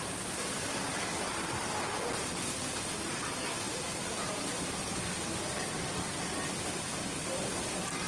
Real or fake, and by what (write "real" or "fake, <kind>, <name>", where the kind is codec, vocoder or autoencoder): real